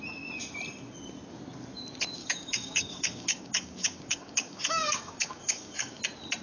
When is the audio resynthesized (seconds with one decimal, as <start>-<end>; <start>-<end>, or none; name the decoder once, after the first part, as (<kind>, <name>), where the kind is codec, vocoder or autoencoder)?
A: 2.2-6.0 (codec, DAC)